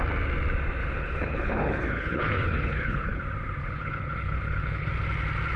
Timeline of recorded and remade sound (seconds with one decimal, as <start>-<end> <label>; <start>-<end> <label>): 0.0-0.8 recorded; 0.8-3.2 remade; 3.2-3.6 recorded; 3.6-4.9 remade; 4.9-5.6 recorded